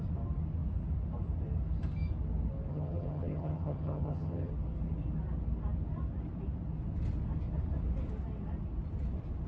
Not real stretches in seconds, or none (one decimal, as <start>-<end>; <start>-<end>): 2.7-4.5